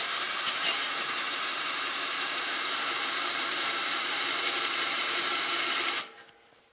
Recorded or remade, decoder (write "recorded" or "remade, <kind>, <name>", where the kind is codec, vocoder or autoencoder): remade, vocoder, BigVGAN v2